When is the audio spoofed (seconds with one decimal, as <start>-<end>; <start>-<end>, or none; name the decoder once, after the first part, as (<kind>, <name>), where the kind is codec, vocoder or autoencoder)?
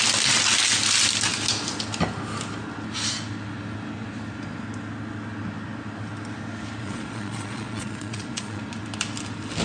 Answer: 6.8-8.6 (vocoder, Vocos)